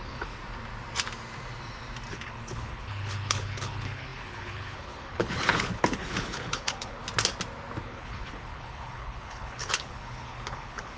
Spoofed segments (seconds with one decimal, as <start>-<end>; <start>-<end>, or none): 0.0-0.4; 2.1-7.0; 7.8-11.0